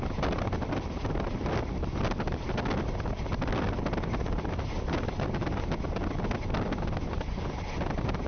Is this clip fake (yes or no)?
no